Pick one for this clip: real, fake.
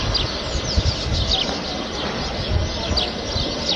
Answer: real